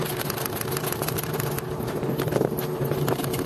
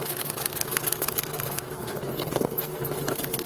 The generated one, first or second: second